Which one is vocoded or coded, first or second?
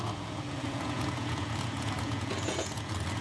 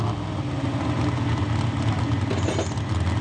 first